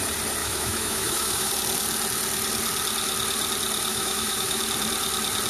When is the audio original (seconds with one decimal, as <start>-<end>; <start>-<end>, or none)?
0.0-0.4; 1.5-3.9; 4.6-5.5